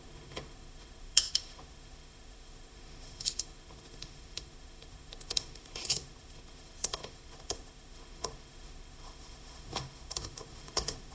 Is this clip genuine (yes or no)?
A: no